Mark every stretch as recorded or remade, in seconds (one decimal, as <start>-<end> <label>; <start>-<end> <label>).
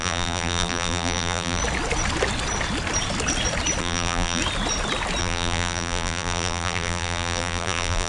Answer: 0.0-1.6 remade; 1.6-3.8 recorded; 3.8-4.4 remade; 4.4-5.2 recorded; 5.2-8.1 remade